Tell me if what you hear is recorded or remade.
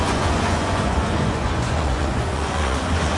remade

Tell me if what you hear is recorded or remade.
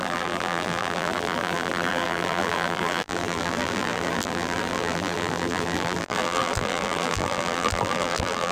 remade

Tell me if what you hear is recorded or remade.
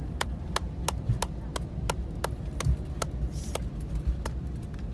recorded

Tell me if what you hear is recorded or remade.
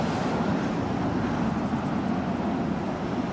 recorded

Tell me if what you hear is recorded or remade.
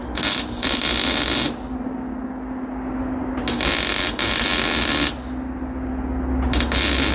recorded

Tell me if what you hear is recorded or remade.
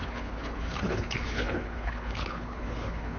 remade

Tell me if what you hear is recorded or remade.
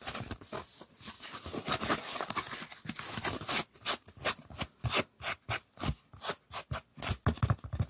recorded